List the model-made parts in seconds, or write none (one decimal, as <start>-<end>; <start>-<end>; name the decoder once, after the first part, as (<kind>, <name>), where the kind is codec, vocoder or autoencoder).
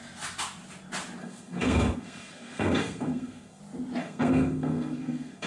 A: 1.2-3.6 (codec, SNAC); 4.0-5.5